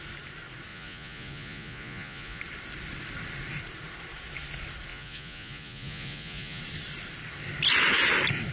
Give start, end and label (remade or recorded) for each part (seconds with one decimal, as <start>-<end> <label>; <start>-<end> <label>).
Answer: 0.0-0.7 recorded; 0.7-2.4 remade; 2.4-4.9 recorded; 4.9-6.6 remade; 6.6-8.5 recorded